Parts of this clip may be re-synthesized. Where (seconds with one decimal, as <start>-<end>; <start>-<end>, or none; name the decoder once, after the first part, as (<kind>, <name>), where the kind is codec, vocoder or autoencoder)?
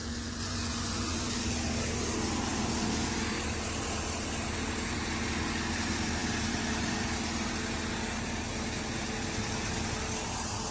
0.0-1.3 (vocoder, Vocos)